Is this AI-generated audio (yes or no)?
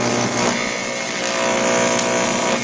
no